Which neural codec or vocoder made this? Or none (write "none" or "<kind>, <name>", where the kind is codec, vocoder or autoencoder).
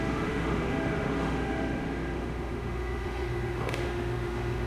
autoencoder, DAC-VAE